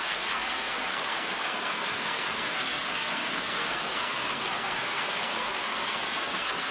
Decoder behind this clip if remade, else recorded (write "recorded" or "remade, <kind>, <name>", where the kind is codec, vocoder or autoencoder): remade, codec, SNAC